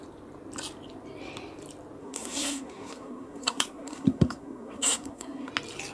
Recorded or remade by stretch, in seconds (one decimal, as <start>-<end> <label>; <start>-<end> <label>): 0.0-2.0 recorded; 2.0-5.5 remade; 5.5-5.9 recorded